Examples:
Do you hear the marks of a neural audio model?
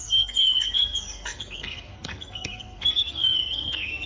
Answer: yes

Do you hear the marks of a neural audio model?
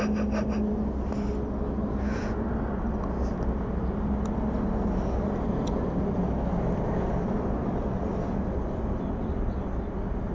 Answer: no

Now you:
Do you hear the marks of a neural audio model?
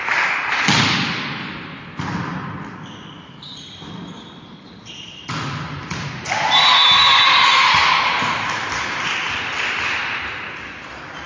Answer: yes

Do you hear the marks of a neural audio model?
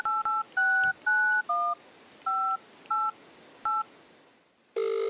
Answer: no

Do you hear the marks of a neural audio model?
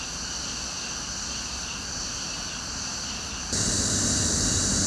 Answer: no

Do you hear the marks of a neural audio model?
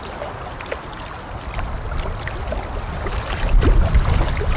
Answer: no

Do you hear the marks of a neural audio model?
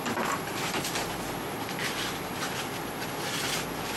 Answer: yes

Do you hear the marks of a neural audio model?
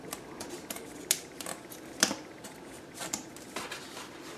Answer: no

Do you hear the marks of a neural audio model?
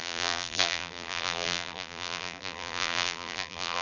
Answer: yes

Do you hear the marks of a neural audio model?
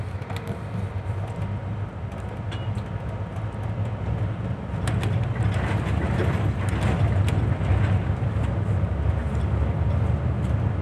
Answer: no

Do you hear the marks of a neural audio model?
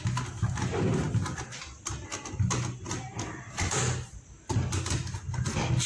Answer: no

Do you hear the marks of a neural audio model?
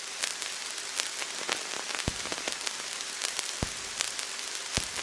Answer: no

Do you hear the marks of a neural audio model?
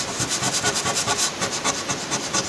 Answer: yes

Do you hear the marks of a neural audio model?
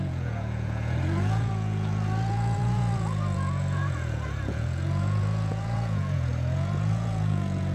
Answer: yes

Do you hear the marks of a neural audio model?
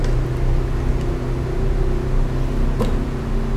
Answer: no